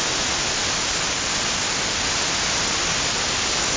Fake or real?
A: real